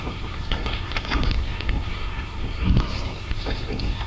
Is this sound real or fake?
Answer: fake